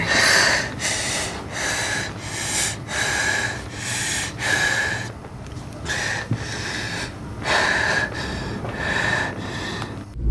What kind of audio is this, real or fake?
real